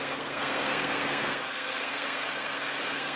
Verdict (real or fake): fake